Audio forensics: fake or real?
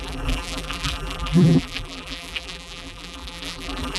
fake